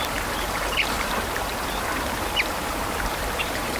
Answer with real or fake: fake